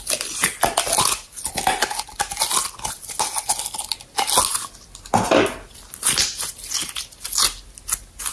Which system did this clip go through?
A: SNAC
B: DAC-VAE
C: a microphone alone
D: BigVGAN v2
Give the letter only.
C